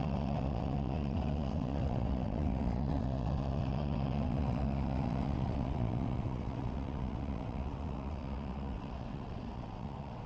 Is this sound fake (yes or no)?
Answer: yes